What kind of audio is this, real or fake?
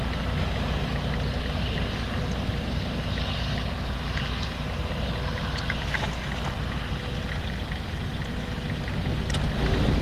real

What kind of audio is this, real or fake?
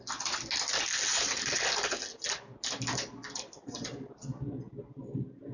real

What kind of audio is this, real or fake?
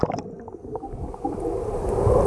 real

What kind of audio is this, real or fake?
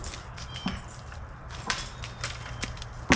real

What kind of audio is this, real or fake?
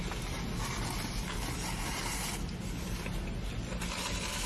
real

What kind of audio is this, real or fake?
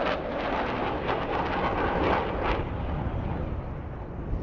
real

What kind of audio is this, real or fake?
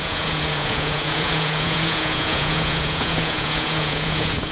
fake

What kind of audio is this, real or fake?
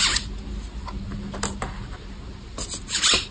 real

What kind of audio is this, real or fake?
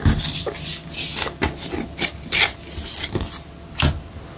real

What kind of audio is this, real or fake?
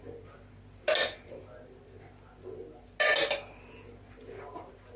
real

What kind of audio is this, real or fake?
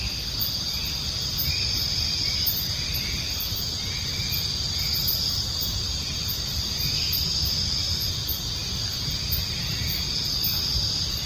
real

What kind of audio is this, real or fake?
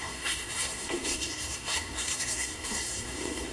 fake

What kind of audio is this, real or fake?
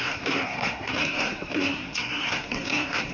fake